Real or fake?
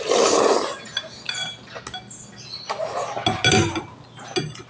real